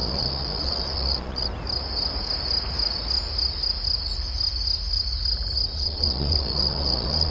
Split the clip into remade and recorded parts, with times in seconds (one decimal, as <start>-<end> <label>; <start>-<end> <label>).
0.0-1.5 remade; 1.5-5.7 recorded; 5.7-7.3 remade